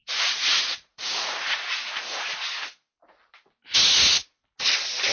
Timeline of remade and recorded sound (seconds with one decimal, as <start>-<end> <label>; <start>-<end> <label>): 0.0-1.9 remade; 1.9-5.1 recorded